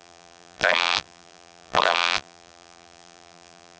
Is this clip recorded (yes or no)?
no